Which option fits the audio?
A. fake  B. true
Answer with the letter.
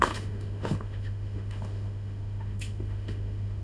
A